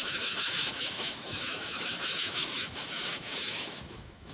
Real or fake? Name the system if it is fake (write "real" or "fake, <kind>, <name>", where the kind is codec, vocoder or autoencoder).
fake, autoencoder, DAC-VAE